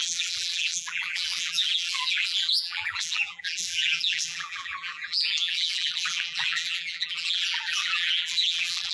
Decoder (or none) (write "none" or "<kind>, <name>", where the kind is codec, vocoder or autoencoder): vocoder, BigVGAN v2